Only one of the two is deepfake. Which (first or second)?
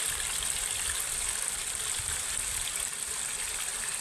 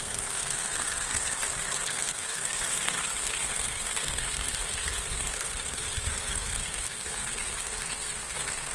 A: second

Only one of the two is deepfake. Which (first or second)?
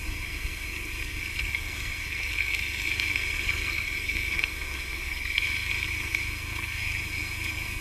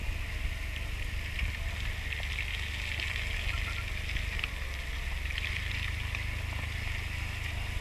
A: first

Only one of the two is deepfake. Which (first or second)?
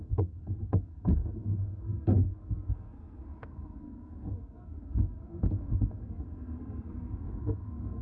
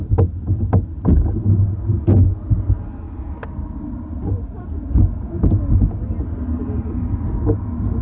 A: first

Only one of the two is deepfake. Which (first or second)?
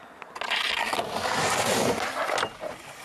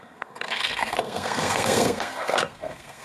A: second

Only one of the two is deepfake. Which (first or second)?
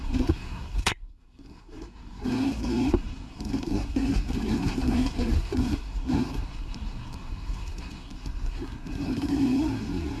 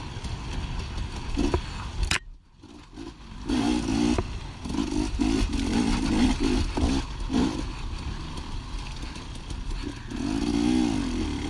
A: first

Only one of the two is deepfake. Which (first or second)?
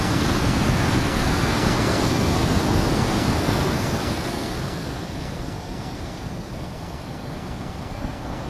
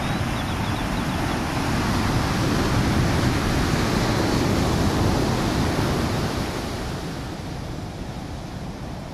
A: first